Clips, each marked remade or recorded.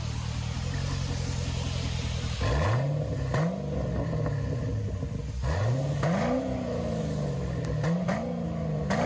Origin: recorded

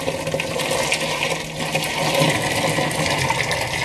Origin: recorded